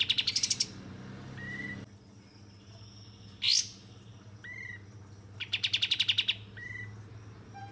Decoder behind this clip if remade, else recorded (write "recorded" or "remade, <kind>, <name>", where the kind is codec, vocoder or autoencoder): recorded